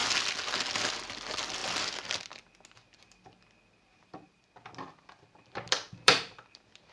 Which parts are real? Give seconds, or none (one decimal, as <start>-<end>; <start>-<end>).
0.0-1.0; 1.6-4.7